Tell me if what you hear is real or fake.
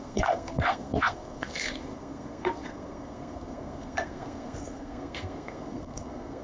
fake